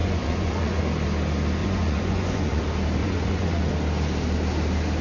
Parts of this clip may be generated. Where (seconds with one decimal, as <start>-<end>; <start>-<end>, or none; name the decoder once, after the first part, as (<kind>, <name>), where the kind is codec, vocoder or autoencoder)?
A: 0.0-0.8 (vocoder, Vocos); 1.6-2.6; 3.0-3.7